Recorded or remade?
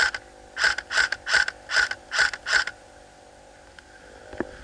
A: recorded